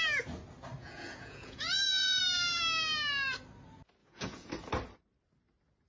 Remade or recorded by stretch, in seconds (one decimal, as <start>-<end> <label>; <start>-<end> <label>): 0.0-0.8 recorded; 0.8-2.2 remade; 2.2-4.0 recorded; 4.0-4.5 remade; 4.5-5.9 recorded